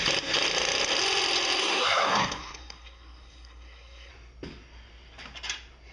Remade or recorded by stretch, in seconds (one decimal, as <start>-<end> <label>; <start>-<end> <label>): 0.0-1.6 recorded; 1.6-4.1 remade; 4.1-5.9 recorded